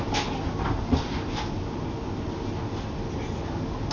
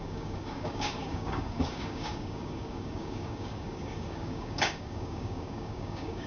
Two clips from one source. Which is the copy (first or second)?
second